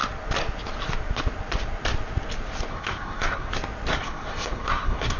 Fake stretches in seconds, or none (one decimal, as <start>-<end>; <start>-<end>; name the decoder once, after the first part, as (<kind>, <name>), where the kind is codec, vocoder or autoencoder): 2.7-3.5 (codec, SNAC); 3.9-5.2